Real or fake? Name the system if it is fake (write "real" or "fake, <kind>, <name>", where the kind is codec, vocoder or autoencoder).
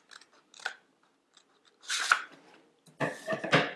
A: real